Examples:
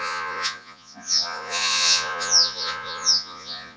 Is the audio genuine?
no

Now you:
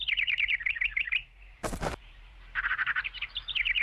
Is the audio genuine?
no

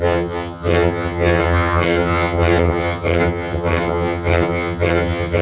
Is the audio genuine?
no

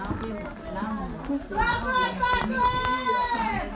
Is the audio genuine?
yes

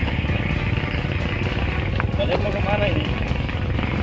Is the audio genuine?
yes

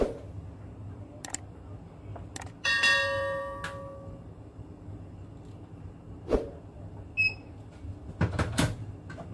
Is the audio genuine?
yes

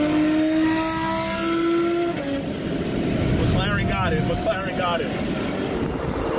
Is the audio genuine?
yes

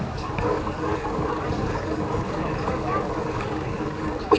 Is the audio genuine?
no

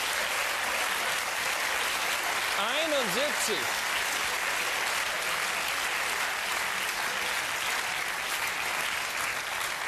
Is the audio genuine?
yes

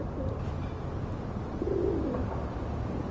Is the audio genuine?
yes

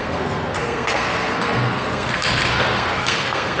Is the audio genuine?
no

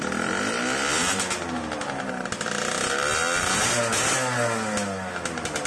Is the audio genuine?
yes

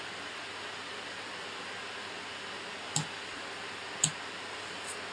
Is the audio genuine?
yes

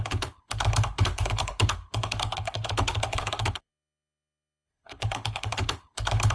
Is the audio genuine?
no